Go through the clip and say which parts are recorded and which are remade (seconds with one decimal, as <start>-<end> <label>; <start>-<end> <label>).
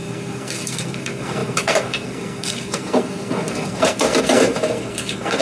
0.0-5.4 remade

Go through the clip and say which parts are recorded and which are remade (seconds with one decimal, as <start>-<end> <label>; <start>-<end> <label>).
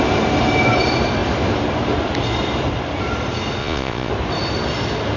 0.0-3.6 recorded; 3.6-4.1 remade; 4.1-5.2 recorded